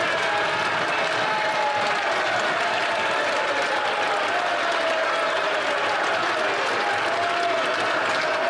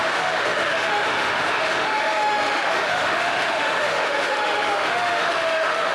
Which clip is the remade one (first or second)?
second